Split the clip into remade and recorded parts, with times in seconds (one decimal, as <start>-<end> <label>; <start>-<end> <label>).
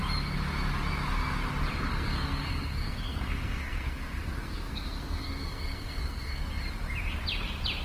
0.0-1.9 recorded; 1.9-6.4 remade; 6.4-7.8 recorded